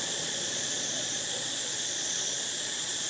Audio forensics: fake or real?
fake